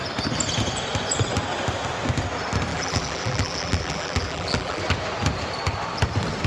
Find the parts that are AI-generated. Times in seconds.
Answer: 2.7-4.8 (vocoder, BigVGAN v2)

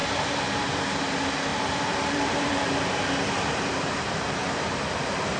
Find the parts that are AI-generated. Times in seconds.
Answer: 0.0-0.8 (vocoder, BigVGAN v2); 1.5-4.7